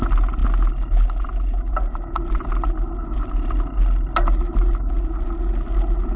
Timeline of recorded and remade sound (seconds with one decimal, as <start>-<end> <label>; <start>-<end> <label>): 0.0-6.2 recorded